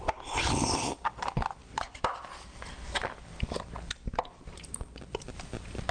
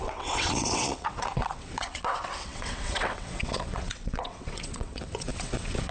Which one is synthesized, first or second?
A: second